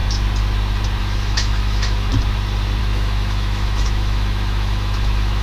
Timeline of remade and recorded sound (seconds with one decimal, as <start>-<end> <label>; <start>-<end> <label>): 0.0-1.0 recorded; 1.0-2.1 remade; 2.1-2.8 recorded; 2.8-5.4 remade